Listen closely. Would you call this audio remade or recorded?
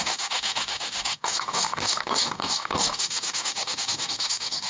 remade